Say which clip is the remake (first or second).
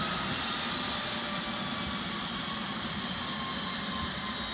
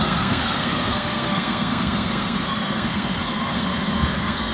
second